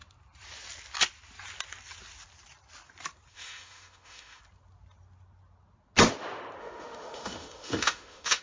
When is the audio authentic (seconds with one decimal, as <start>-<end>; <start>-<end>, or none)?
0.0-3.3; 4.4-6.6

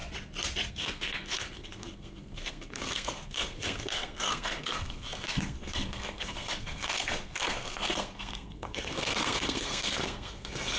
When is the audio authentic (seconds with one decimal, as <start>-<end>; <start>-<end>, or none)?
0.0-0.7